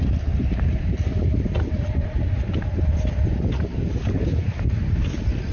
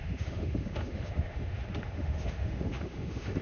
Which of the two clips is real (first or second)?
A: first